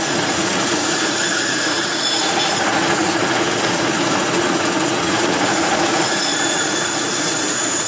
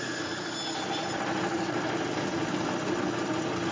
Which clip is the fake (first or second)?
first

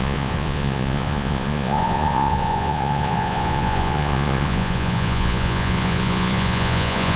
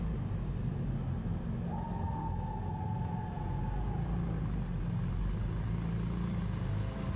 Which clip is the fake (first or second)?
first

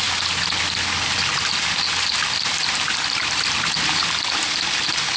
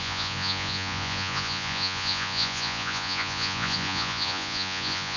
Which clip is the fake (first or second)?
second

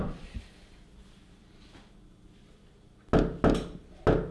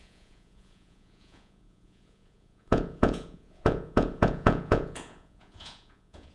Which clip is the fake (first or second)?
second